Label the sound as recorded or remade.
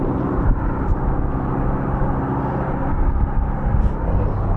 recorded